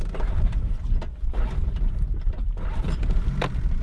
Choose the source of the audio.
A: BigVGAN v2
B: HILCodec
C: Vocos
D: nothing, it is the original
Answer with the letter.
D